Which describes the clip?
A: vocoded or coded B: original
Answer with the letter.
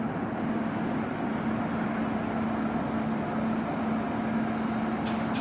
B